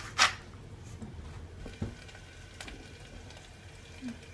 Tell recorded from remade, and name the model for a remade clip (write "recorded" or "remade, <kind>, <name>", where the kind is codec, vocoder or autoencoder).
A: recorded